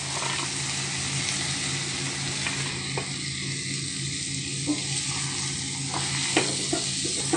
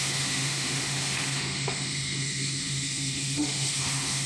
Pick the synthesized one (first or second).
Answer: second